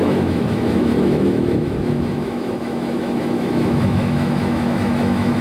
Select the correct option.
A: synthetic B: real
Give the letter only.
A